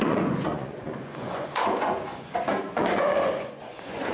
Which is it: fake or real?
fake